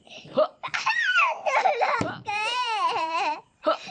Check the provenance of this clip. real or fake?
fake